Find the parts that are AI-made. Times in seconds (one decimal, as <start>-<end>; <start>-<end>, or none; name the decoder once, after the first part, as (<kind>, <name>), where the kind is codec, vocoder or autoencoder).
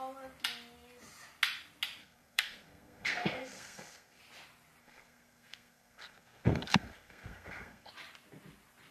2.0-4.2 (codec, SNAC); 4.8-7.9